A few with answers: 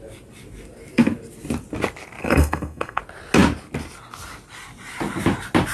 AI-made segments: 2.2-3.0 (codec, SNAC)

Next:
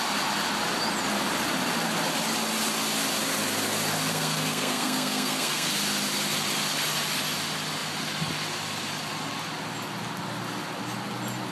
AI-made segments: 4.1-5.7 (codec, SNAC)

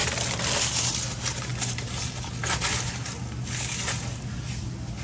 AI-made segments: none

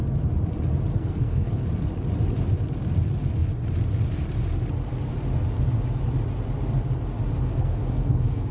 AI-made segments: 0.9-1.5 (codec, SNAC); 7.5-8.5

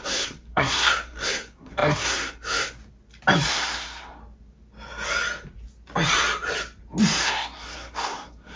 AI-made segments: 0.0-2.8 (codec, SNAC); 3.5-4.2; 7.2-8.6

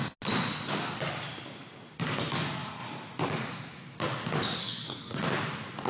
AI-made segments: 4.6-5.2 (codec, SNAC)

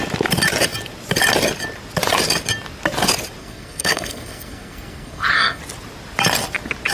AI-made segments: 3.4-5.6 (codec, SNAC)